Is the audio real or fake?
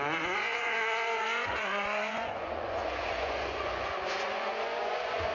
fake